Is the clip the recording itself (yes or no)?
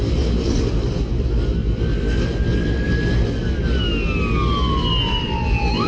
yes